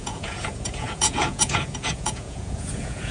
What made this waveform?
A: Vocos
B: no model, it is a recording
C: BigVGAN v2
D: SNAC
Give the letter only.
A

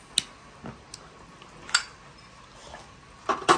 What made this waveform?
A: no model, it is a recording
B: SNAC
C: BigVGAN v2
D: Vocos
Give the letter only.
A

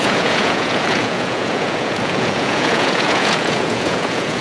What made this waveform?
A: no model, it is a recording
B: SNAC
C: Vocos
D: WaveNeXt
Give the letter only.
C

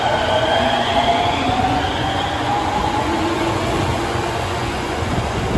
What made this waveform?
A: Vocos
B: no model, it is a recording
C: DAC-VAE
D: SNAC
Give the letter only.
A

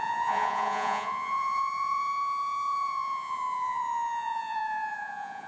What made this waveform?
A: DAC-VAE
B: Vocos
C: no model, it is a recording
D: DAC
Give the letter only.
B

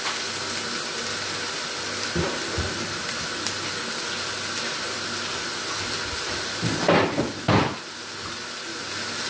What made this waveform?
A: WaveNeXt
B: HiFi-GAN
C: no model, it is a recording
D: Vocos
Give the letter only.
C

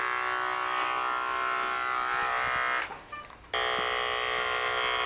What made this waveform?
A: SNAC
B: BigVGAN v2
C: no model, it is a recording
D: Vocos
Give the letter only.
C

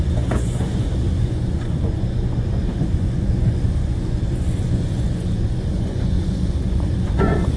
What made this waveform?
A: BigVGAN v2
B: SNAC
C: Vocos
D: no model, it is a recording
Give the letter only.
C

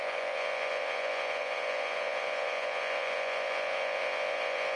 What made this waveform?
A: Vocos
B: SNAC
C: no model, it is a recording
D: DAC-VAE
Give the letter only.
A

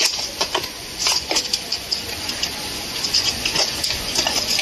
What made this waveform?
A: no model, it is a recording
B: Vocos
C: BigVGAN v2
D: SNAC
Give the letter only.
B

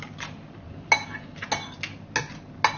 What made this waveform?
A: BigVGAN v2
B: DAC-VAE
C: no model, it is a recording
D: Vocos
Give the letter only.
C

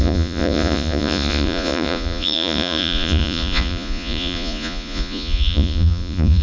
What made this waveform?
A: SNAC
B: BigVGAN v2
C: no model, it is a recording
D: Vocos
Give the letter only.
D